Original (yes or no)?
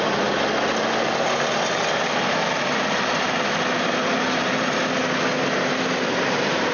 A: yes